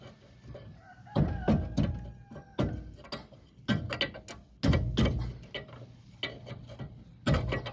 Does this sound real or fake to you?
real